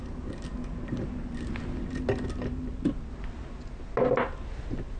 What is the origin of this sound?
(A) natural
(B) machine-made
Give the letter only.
A